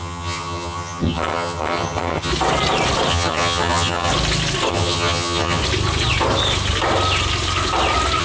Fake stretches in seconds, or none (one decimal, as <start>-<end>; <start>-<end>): 0.0-2.3; 3.1-4.1; 4.7-5.6